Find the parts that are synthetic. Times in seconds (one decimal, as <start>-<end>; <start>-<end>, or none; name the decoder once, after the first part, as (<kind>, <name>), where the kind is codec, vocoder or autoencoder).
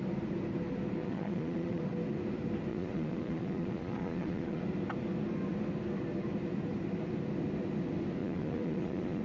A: 1.0-1.8 (vocoder, Vocos); 2.7-4.6; 8.2-9.2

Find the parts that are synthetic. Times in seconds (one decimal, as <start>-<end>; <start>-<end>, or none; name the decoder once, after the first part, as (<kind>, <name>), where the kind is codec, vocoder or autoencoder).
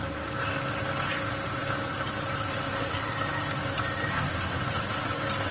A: 4.1-4.6 (codec, SNAC)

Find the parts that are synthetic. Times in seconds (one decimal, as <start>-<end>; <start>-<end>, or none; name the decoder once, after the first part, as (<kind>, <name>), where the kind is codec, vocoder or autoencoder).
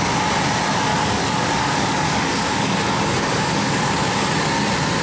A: 0.9-3.9 (codec, DAC)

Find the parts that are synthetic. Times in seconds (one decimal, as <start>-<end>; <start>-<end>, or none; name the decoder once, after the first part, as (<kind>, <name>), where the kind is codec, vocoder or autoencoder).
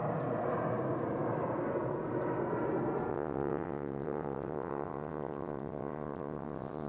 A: 3.1-6.9 (vocoder, WaveNeXt)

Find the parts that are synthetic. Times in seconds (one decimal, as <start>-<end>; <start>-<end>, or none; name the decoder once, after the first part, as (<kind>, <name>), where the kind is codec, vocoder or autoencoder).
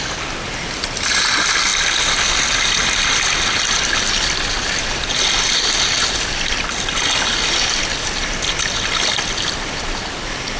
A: none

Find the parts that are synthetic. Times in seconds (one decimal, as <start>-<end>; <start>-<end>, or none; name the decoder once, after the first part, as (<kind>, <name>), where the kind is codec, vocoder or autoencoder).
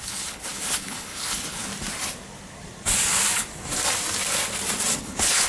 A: 0.0-1.7 (codec, HILCodec); 5.0-5.5